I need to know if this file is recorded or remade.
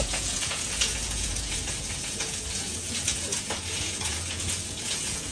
remade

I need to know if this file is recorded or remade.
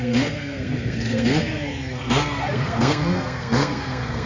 remade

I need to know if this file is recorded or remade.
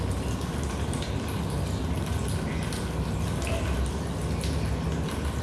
recorded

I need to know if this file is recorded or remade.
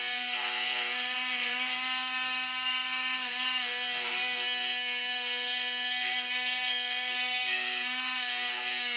remade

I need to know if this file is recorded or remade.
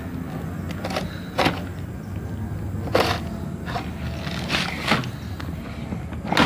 recorded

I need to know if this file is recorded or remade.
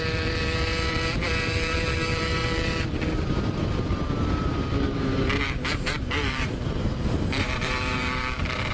remade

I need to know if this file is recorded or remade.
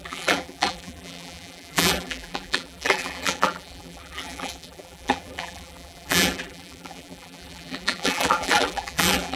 remade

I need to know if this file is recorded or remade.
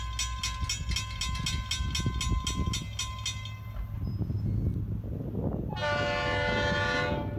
recorded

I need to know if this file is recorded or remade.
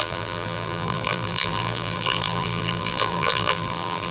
remade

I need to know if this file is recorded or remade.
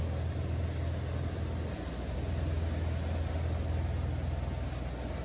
recorded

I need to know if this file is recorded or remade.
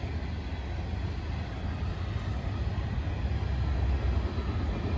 recorded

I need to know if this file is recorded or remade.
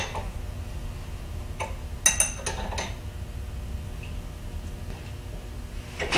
recorded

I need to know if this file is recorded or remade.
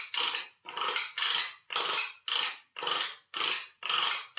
recorded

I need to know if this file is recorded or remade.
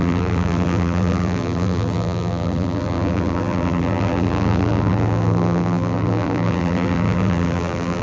remade